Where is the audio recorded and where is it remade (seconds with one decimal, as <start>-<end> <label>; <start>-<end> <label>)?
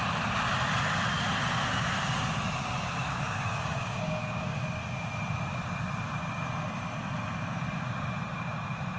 0.0-3.0 recorded; 3.0-4.7 remade; 4.7-9.0 recorded